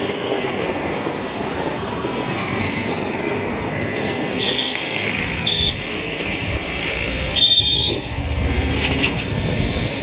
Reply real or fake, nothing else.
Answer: fake